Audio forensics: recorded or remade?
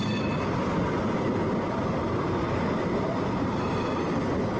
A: recorded